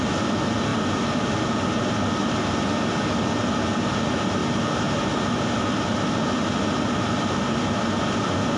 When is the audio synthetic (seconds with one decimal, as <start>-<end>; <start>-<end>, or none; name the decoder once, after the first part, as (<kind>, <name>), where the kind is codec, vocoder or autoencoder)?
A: none